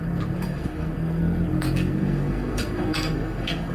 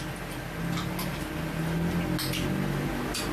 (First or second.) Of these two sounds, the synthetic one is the first